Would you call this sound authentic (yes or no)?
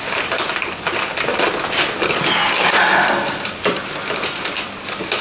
yes